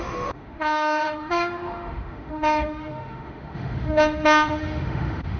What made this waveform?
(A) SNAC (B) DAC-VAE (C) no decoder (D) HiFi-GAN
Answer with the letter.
B